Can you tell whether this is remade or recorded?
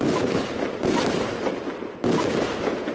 recorded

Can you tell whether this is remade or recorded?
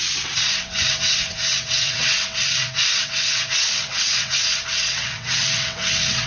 remade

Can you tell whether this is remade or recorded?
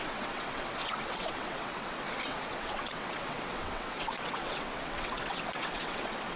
remade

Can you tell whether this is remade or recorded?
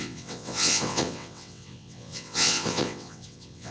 remade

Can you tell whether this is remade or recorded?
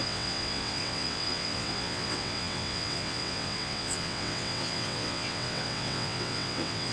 remade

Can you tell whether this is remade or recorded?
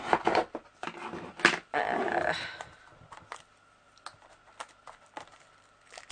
recorded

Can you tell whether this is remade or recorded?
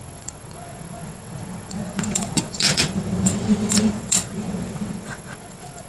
remade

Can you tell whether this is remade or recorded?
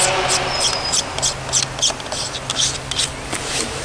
recorded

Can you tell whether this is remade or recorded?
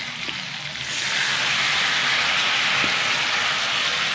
recorded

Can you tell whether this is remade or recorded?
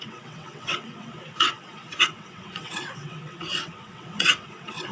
remade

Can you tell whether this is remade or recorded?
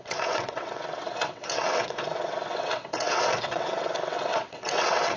remade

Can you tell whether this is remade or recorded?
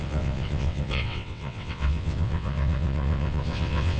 remade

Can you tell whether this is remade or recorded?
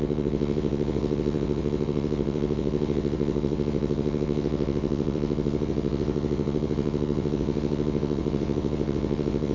remade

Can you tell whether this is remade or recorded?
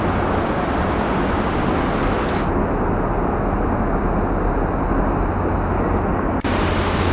recorded